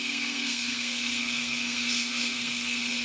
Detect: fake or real fake